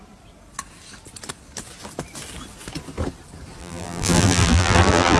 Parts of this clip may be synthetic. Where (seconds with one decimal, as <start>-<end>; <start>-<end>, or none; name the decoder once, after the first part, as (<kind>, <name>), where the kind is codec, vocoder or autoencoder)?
3.6-5.2 (vocoder, BigVGAN v2)